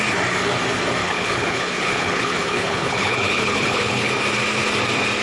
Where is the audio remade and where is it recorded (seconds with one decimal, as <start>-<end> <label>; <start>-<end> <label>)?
0.0-1.0 recorded; 1.0-4.1 remade; 4.1-5.2 recorded